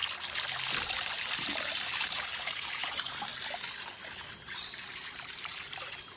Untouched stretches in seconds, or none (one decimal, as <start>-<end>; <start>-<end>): 0.0-0.7; 3.3-4.3